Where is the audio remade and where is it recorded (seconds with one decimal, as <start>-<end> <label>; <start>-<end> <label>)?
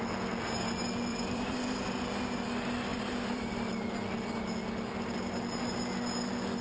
0.0-1.1 recorded; 1.1-1.9 remade; 1.9-2.9 recorded; 2.9-3.9 remade; 3.9-6.6 recorded